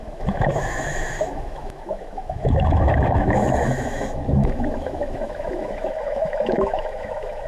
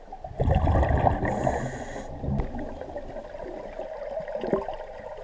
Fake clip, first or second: first